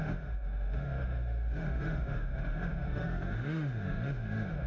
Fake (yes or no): yes